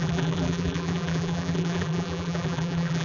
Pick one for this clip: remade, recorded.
remade